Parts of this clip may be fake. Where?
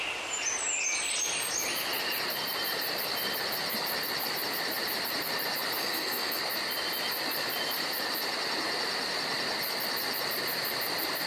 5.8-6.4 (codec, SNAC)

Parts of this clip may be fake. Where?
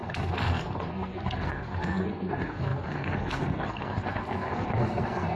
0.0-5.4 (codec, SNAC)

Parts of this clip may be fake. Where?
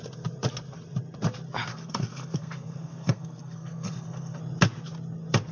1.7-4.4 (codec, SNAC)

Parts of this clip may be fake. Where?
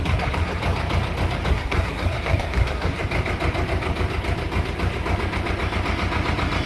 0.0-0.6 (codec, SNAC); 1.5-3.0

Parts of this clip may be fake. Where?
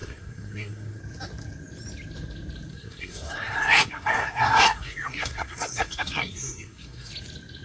0.0-1.0 (codec, SNAC); 2.7-7.1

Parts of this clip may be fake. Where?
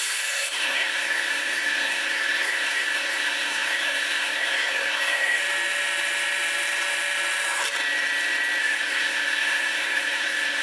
0.0-5.4 (codec, SNAC); 8.6-10.6